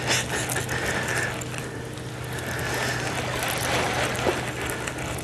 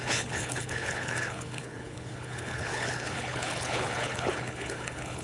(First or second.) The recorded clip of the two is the first